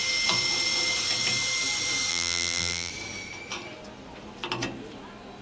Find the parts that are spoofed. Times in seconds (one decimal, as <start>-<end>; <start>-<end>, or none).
2.1-2.9